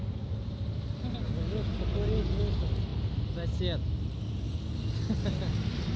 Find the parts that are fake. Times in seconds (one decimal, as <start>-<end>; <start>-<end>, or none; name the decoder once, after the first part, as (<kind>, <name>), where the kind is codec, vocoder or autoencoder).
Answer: none